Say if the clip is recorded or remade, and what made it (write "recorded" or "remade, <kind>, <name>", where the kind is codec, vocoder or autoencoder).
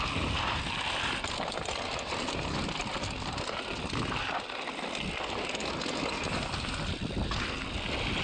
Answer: recorded